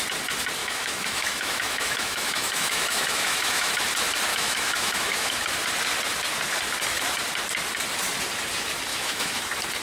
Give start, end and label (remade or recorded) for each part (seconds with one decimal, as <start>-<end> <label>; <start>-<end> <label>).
0.0-0.6 recorded; 0.6-3.7 remade; 3.7-4.3 recorded; 4.3-5.3 remade; 5.3-8.9 recorded; 8.9-9.4 remade; 9.4-9.8 recorded